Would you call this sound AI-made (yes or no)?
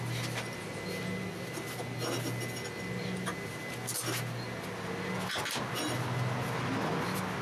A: no